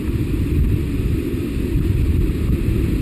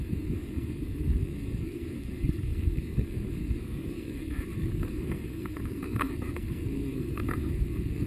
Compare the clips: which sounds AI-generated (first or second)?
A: second